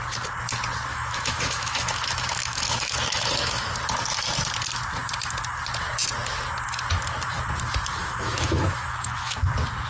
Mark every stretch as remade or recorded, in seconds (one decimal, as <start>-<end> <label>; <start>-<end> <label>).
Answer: 0.0-0.9 recorded; 0.9-3.7 remade; 3.7-8.0 recorded; 8.0-9.4 remade; 9.4-9.9 recorded